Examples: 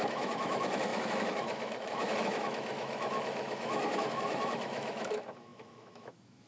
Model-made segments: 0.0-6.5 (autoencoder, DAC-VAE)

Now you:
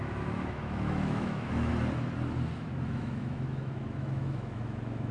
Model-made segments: 0.0-1.7 (autoencoder, DAC-VAE); 2.5-5.1

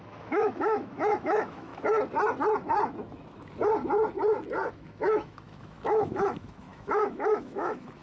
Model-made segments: 0.0-1.7 (autoencoder, DAC-VAE); 4.7-8.0

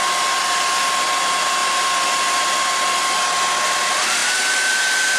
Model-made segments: none

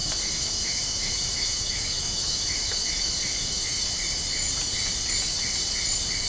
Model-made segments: 0.0-3.8 (autoencoder, DAC-VAE)

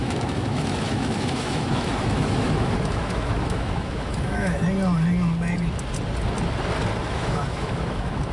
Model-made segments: 0.0-4.6 (autoencoder, DAC-VAE); 7.1-8.3

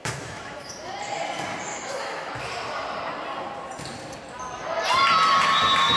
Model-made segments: 0.0-0.7 (autoencoder, DAC-VAE); 1.7-2.3